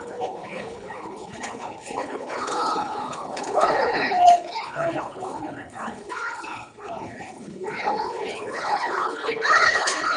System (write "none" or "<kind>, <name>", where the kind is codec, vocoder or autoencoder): codec, HILCodec